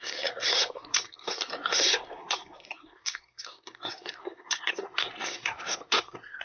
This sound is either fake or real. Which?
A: fake